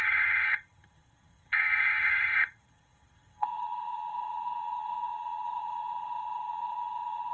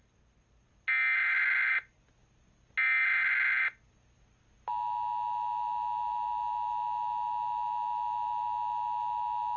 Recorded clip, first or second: second